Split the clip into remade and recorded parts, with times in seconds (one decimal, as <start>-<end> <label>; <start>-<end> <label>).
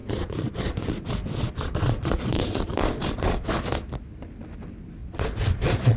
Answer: 0.0-3.6 remade; 3.6-5.0 recorded; 5.0-6.0 remade